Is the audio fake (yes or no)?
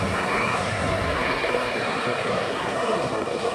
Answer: yes